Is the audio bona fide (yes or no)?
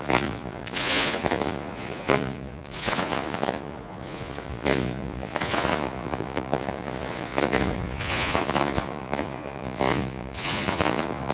no